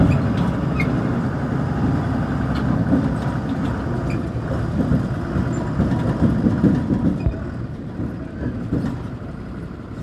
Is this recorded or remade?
recorded